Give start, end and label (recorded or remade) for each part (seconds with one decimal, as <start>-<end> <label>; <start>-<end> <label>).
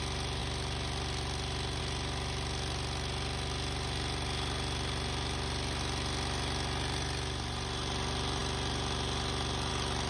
0.0-10.1 recorded